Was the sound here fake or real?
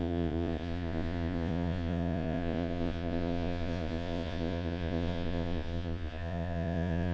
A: fake